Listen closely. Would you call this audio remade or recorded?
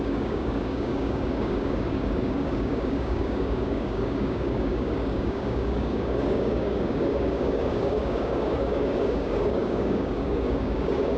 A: remade